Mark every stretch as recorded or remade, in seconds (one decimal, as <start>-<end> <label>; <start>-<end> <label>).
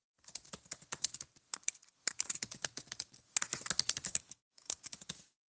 0.0-4.1 recorded; 4.1-5.1 remade; 5.1-5.6 recorded